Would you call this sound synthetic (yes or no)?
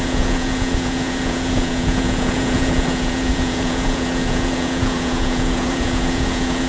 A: yes